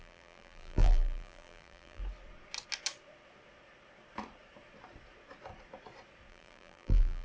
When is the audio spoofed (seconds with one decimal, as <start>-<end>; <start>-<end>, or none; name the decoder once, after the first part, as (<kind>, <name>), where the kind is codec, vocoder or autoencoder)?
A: 0.0-2.0 (vocoder, BigVGAN v2); 6.3-7.2